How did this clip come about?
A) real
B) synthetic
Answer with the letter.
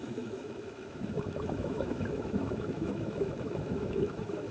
B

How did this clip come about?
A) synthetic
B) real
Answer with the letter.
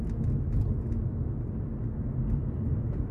B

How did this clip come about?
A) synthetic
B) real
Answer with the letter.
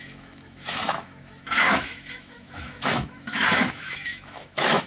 A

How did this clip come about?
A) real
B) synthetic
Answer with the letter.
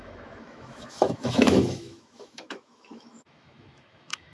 B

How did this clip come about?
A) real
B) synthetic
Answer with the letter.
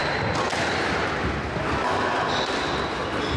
A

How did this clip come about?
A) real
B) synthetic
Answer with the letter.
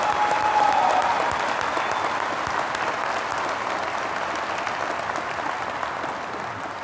A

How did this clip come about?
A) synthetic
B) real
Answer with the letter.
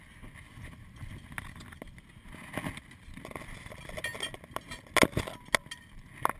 B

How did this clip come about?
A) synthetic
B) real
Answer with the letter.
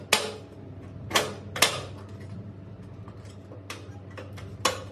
B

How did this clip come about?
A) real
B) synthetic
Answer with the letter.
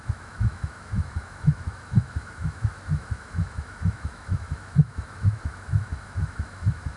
B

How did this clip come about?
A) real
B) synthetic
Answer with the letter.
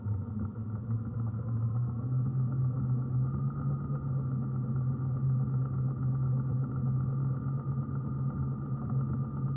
A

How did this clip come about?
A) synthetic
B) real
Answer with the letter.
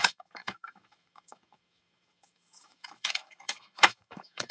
A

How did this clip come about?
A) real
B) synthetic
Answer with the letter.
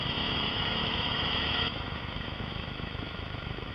B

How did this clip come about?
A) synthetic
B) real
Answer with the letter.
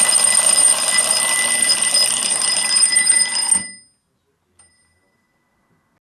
B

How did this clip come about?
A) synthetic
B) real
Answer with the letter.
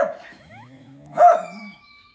A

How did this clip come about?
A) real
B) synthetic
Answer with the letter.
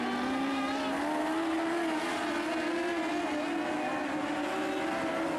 A